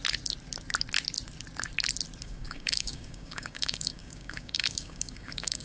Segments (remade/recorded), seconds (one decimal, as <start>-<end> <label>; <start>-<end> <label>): 0.0-2.2 recorded; 2.2-5.6 remade